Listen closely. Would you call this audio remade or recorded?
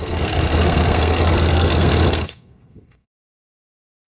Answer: remade